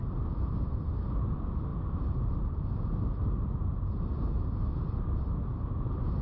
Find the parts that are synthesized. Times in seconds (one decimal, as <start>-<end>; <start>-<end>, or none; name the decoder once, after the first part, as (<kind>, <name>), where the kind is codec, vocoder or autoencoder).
none